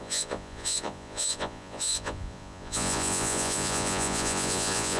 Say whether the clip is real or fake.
fake